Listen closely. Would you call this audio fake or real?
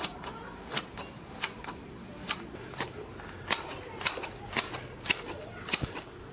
real